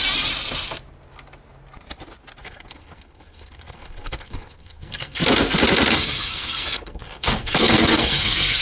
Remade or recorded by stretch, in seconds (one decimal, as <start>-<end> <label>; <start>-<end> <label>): 0.0-2.4 recorded; 2.4-5.2 remade; 5.2-5.9 recorded; 5.9-8.6 remade